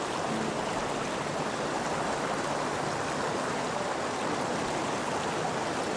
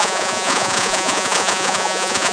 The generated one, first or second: second